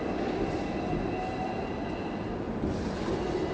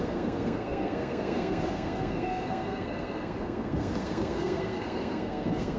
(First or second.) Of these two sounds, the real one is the first